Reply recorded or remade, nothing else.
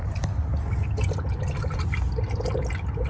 recorded